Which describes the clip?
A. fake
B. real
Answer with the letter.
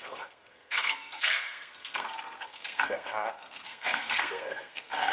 A